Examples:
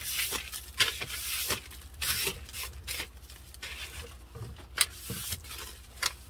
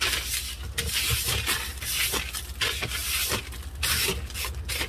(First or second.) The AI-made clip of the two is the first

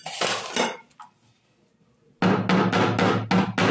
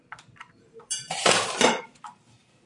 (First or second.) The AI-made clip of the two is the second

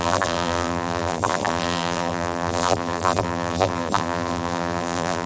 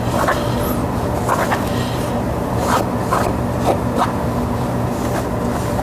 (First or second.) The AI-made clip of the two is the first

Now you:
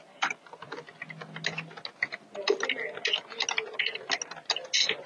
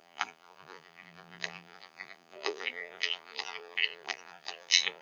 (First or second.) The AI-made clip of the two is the second